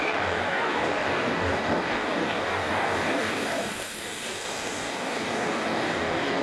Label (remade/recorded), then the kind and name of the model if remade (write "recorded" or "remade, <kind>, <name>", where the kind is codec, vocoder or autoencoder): remade, codec, DAC